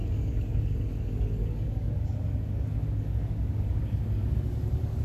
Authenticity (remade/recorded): remade